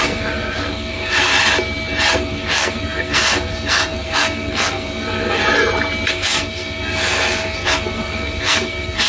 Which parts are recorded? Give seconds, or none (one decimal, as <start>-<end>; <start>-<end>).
1.3-2.1; 5.4-6.1